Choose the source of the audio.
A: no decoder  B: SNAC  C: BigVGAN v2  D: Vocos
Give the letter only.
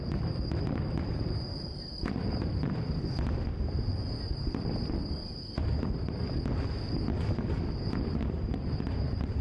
A